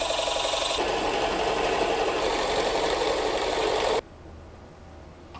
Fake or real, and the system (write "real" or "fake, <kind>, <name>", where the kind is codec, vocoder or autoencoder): real